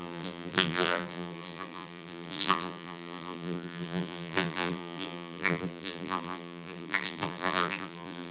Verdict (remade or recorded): remade